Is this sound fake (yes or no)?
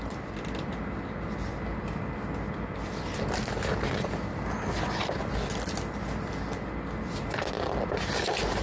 no